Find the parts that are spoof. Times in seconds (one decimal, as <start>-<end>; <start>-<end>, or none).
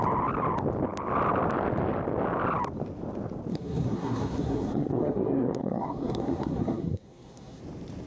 3.5-7.6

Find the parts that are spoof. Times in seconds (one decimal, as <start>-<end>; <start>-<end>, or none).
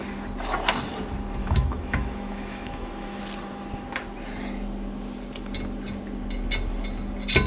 1.4-3.2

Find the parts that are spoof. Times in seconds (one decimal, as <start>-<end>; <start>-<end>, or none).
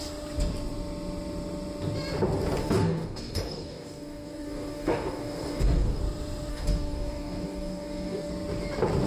2.6-6.0; 6.5-8.3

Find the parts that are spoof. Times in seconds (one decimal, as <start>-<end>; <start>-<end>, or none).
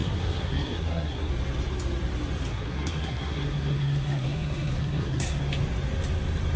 0.0-1.3; 2.5-5.4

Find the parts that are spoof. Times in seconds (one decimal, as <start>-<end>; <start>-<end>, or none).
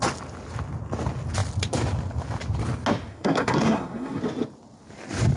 3.1-4.2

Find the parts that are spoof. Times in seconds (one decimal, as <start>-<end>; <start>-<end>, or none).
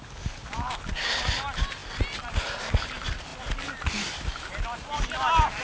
none